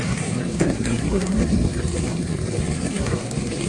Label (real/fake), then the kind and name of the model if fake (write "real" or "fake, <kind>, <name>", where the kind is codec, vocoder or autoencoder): fake, codec, SNAC